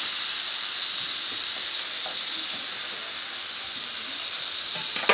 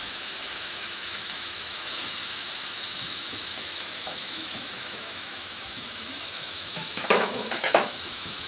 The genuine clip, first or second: first